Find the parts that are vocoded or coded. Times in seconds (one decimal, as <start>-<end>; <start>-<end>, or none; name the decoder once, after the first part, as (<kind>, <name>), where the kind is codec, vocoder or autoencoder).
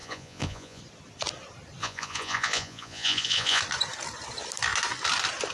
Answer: 0.0-0.8 (vocoder, Vocos); 1.8-3.6